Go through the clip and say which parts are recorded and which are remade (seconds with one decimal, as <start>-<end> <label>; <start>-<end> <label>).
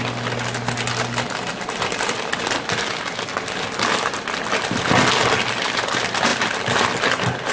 0.0-7.5 recorded